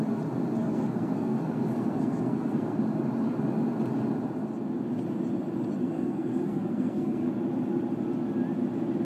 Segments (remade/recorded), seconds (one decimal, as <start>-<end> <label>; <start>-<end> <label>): 0.0-0.6 recorded; 0.6-2.8 remade; 2.8-5.8 recorded; 5.8-7.3 remade; 7.3-9.0 recorded